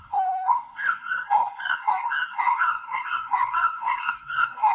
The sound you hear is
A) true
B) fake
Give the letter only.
B